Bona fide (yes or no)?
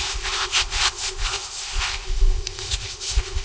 no